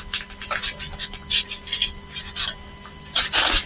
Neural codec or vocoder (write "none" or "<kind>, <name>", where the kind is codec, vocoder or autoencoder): none